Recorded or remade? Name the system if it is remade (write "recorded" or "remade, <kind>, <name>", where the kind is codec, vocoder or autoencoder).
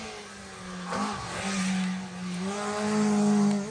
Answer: recorded